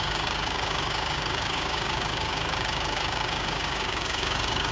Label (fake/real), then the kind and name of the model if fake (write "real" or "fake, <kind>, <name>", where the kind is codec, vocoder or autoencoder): fake, codec, DAC